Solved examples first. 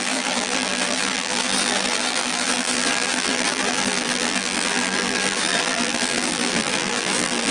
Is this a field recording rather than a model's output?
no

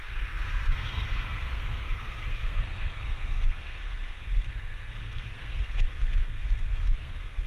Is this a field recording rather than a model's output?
no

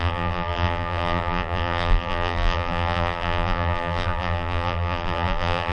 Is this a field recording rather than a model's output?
no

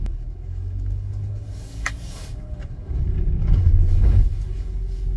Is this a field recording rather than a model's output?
no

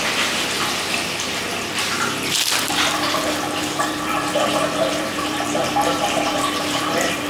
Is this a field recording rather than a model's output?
no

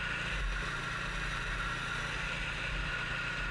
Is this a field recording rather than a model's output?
yes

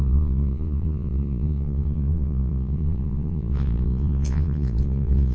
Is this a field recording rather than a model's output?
no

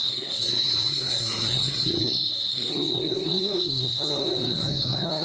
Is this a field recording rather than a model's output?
no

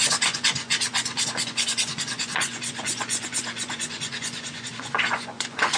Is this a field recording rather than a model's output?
no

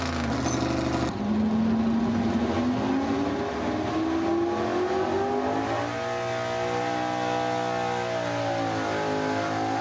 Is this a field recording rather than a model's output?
yes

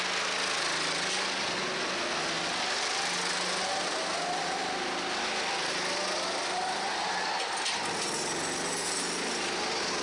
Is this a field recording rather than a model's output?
yes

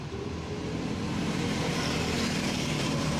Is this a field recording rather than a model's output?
no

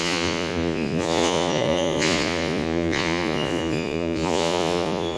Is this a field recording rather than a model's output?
no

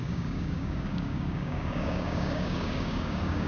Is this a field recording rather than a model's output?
no